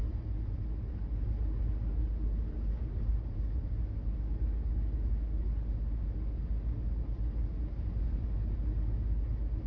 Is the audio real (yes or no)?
yes